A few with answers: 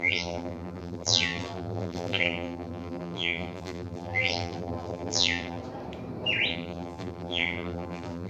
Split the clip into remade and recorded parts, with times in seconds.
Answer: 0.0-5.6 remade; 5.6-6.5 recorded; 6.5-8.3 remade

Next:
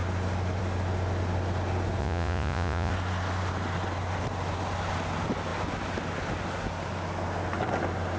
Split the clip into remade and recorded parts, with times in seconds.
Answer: 0.0-2.0 recorded; 2.0-2.9 remade; 2.9-8.2 recorded

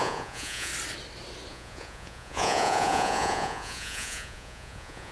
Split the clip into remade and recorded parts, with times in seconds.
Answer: 0.0-0.7 remade; 0.7-1.5 recorded; 1.5-5.1 remade

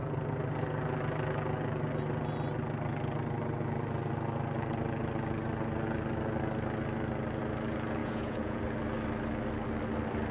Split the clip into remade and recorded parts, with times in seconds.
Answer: 0.0-8.0 recorded; 8.0-8.6 remade; 8.6-10.3 recorded

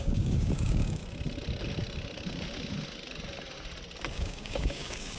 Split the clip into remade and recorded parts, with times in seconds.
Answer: 0.0-1.0 remade; 1.0-4.1 recorded; 4.1-5.2 remade

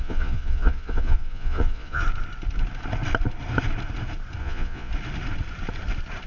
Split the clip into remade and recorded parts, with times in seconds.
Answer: 0.0-2.0 remade; 2.0-4.4 recorded; 4.4-4.9 remade; 4.9-6.3 recorded

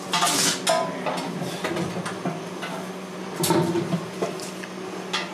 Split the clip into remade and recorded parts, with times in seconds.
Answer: 0.0-5.3 recorded

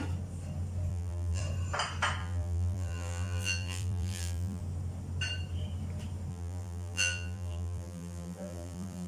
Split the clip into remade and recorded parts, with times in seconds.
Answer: 0.0-0.9 recorded; 0.9-1.4 remade; 1.4-2.2 recorded; 2.2-4.6 remade; 4.6-6.3 recorded; 6.3-9.1 remade